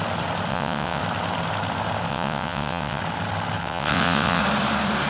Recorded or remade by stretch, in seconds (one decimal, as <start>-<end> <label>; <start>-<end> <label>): 0.0-0.5 recorded; 0.5-1.0 remade; 1.0-2.1 recorded; 2.1-3.0 remade; 3.0-3.6 recorded; 3.6-4.4 remade; 4.4-5.1 recorded